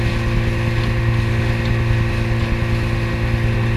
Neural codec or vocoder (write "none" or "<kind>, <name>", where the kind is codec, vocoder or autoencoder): none